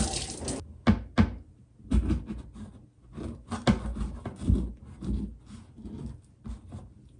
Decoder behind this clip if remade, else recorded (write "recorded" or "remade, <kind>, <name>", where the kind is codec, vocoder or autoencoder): recorded